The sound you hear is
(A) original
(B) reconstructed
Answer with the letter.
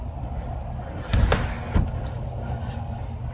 A